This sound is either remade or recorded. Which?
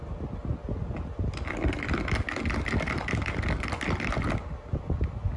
recorded